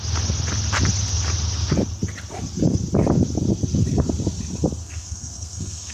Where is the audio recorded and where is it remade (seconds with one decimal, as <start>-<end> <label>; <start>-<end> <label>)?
0.0-4.8 recorded; 4.8-5.9 remade